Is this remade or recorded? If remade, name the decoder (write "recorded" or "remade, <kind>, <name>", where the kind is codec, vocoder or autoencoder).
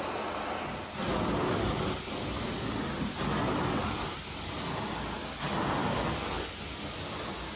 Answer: recorded